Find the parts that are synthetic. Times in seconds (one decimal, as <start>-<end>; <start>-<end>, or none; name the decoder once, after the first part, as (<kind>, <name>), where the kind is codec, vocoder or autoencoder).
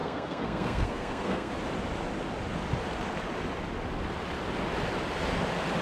0.0-1.5 (codec, SNAC)